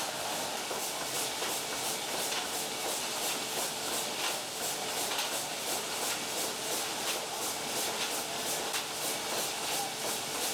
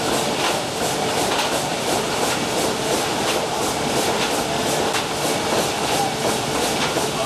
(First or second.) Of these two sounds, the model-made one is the second